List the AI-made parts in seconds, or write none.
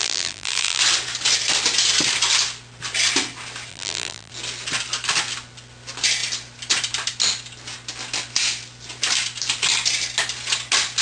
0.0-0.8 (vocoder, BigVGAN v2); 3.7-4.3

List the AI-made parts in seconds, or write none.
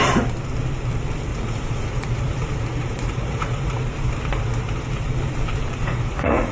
1.3-3.8 (vocoder, Vocos); 5.6-6.5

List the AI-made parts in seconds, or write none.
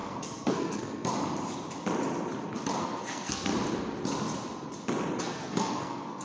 0.0-1.1 (codec, SNAC); 2.8-3.5; 5.2-6.2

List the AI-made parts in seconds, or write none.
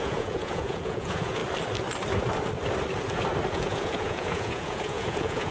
0.0-1.4 (vocoder, Vocos); 3.5-5.5